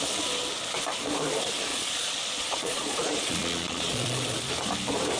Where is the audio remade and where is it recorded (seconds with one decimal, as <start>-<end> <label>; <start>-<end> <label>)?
0.0-1.7 recorded; 1.7-4.5 remade; 4.5-5.2 recorded